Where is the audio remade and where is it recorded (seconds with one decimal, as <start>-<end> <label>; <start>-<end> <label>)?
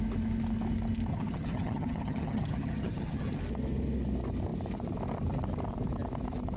0.0-1.1 recorded; 1.1-3.4 remade; 3.4-6.6 recorded